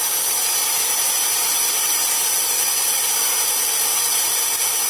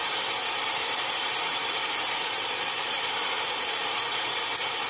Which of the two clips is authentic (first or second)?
first